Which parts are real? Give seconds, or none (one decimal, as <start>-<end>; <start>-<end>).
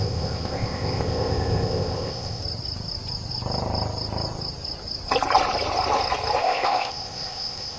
2.4-6.4